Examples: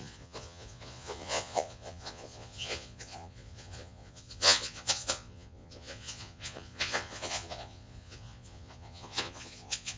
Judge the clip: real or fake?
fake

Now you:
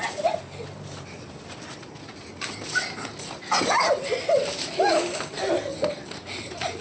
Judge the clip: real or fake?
real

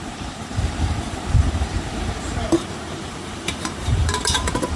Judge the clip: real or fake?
fake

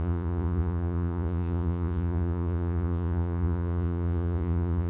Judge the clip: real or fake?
fake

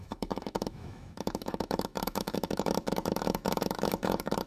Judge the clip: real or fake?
fake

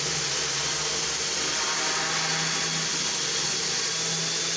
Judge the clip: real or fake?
real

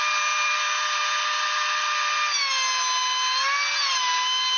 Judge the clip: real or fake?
real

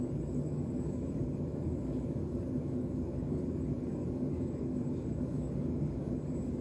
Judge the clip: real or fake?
fake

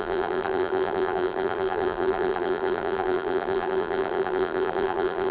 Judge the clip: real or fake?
fake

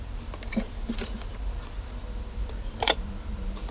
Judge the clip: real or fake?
fake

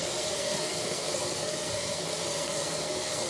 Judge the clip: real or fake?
fake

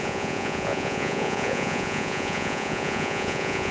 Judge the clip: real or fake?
fake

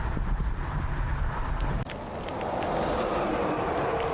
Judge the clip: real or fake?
real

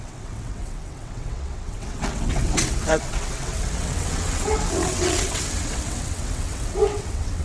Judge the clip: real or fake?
fake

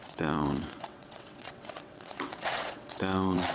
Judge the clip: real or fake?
fake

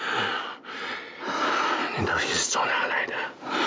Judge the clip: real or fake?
real